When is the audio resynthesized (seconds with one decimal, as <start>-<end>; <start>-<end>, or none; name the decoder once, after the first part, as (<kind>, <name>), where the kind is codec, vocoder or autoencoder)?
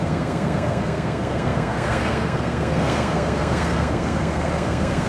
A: 0.0-5.1 (codec, SNAC)